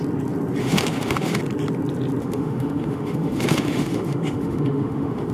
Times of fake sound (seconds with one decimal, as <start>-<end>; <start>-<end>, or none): 0.6-1.4; 2.2-5.3